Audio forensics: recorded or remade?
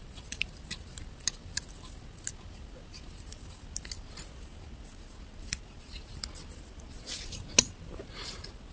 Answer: recorded